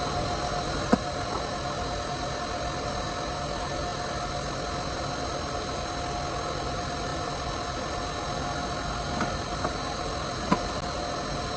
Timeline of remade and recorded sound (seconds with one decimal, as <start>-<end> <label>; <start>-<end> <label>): 0.0-11.6 recorded